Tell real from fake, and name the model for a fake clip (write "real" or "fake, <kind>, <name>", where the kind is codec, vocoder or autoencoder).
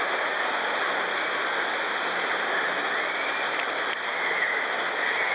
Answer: real